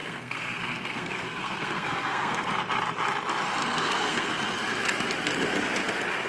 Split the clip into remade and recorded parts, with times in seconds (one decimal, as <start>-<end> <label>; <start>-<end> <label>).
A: 0.0-2.5 remade; 2.5-3.6 recorded; 3.6-4.3 remade; 4.3-6.3 recorded